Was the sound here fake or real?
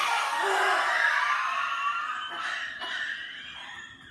real